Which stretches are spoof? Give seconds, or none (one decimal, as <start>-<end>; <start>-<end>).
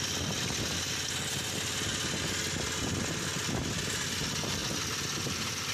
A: none